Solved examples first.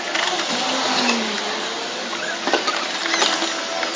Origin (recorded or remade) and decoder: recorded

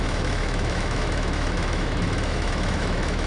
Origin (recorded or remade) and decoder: remade, autoencoder, DAC-VAE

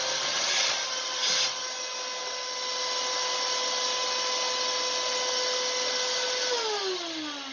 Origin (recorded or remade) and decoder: recorded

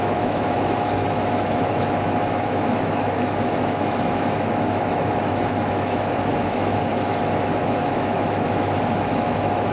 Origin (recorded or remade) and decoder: remade, autoencoder, DAC-VAE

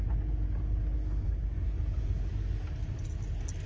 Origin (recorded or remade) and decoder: recorded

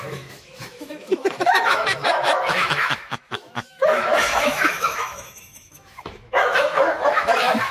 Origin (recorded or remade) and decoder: remade, autoencoder, DAC-VAE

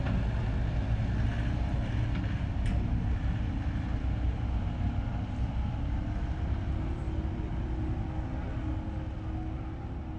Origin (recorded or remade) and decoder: recorded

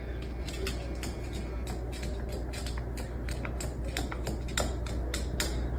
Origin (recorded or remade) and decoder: recorded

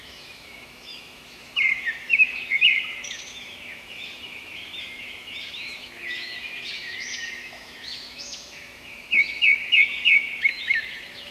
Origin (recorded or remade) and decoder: remade, autoencoder, DAC-VAE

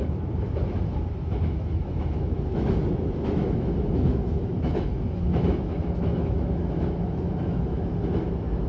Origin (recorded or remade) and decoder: remade, autoencoder, DAC-VAE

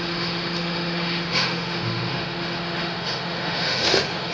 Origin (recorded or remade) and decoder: remade, autoencoder, DAC-VAE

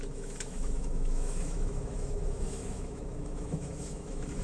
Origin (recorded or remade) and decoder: remade, autoencoder, DAC-VAE